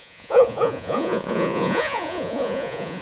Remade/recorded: remade